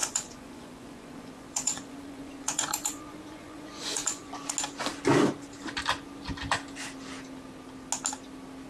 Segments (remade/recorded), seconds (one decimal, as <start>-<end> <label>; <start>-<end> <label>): 0.0-4.5 remade; 4.5-8.7 recorded